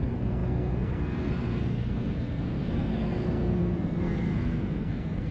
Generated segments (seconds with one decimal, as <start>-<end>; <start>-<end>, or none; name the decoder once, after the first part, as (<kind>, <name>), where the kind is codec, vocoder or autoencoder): 0.0-5.3 (codec, SNAC)